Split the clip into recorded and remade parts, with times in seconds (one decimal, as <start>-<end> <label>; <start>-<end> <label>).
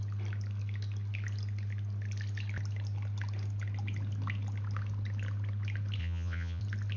0.0-6.0 recorded; 6.0-6.6 remade; 6.6-7.0 recorded